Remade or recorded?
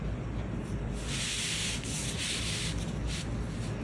recorded